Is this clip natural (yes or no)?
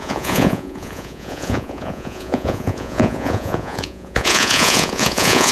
no